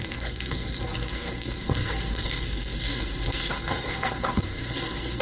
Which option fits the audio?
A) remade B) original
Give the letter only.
A